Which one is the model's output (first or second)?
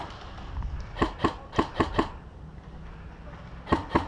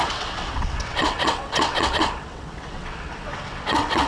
second